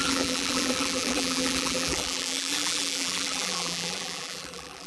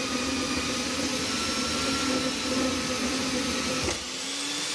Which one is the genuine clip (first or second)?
second